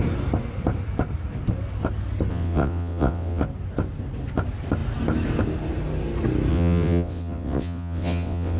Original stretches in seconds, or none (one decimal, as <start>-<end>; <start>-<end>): 0.0-2.3; 3.4-6.5